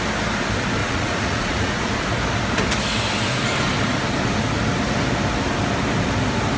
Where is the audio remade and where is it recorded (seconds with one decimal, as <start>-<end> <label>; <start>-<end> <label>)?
0.0-0.8 recorded; 0.8-1.9 remade; 1.9-6.6 recorded